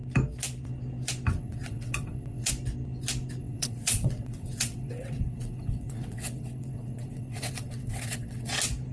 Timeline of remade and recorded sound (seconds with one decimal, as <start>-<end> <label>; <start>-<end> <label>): 0.0-1.3 recorded; 1.3-2.5 remade; 2.5-3.4 recorded; 3.4-8.5 remade; 8.5-8.9 recorded